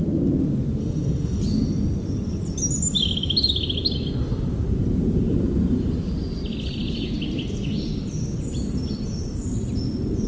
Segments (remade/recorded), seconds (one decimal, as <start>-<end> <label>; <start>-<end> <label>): 0.0-0.8 recorded; 0.8-1.4 remade; 1.4-10.3 recorded